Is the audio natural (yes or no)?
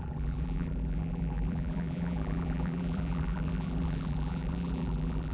no